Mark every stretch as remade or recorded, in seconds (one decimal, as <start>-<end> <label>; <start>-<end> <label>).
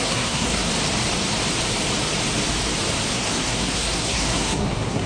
0.0-0.7 remade; 0.7-3.1 recorded; 3.1-5.1 remade